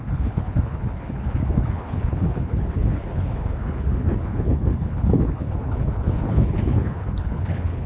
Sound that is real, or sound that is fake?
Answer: fake